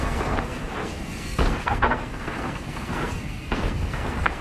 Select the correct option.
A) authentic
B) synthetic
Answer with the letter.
B